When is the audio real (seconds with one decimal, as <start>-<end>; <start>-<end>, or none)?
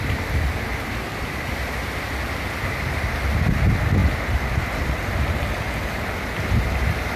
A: none